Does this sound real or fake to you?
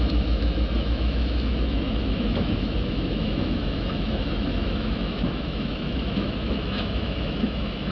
fake